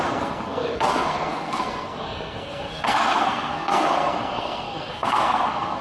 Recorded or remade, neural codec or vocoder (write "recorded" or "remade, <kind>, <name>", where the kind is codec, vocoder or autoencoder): remade, codec, SNAC